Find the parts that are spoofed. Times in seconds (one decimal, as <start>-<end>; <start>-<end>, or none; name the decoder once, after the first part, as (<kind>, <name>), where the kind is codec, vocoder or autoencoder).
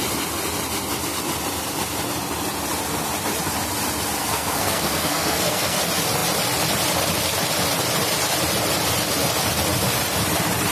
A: 4.2-5.8 (codec, SNAC)